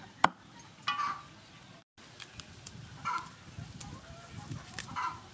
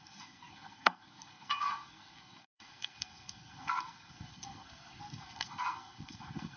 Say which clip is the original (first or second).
first